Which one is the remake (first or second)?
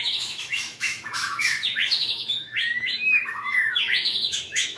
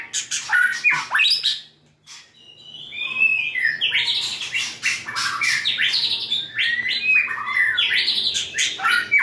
first